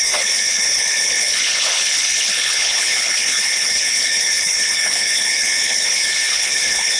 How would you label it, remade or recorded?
remade